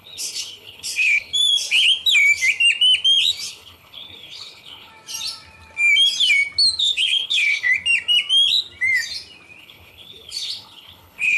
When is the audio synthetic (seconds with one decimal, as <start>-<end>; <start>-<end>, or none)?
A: 0.0-1.3; 3.5-4.9; 6.8-7.7; 9.6-11.4